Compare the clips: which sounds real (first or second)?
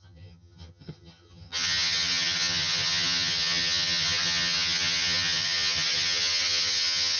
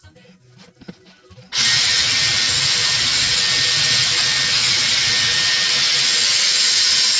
second